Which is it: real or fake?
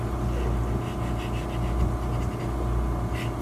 real